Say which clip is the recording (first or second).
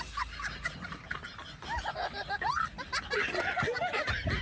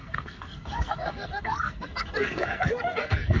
first